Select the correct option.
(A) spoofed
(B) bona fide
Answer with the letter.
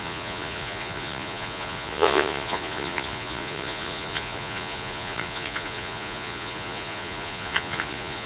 A